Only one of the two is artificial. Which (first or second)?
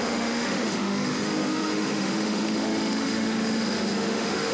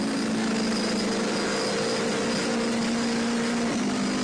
first